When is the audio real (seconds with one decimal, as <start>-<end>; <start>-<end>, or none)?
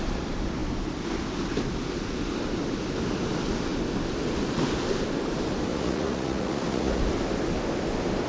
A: 0.0-5.7; 7.0-8.3